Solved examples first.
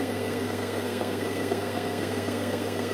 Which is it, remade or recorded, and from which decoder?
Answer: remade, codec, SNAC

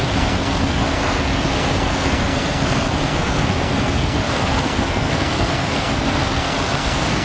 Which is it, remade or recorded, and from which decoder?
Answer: remade, codec, SNAC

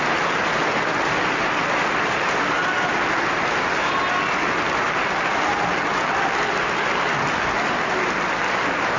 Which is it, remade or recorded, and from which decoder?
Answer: recorded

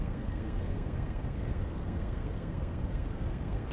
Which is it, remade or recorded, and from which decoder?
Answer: remade, codec, SNAC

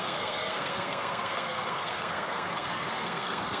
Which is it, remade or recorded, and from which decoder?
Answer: remade, codec, SNAC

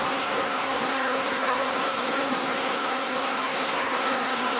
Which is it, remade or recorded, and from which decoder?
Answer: remade, codec, SNAC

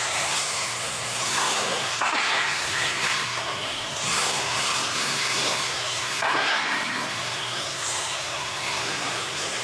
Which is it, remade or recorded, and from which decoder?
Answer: remade, codec, SNAC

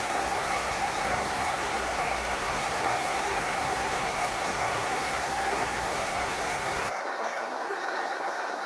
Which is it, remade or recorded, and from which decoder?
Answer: remade, codec, SNAC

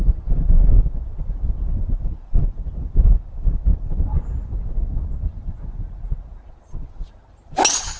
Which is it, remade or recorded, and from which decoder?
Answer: recorded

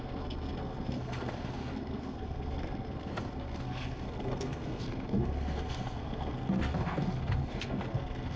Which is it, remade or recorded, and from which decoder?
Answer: remade, codec, SNAC